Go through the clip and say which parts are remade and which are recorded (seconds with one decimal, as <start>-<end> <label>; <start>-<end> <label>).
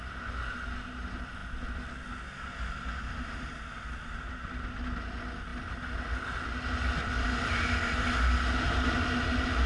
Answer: 0.0-9.7 recorded